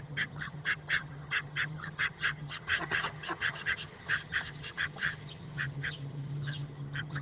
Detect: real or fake fake